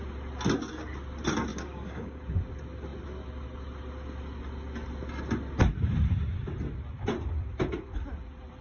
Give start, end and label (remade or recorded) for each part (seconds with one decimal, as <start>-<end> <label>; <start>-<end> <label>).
0.0-1.5 recorded; 1.5-2.2 remade; 2.2-8.6 recorded